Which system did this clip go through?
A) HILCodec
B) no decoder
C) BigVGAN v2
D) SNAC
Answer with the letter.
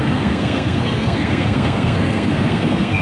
D